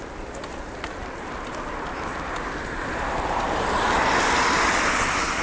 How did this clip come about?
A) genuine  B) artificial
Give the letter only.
A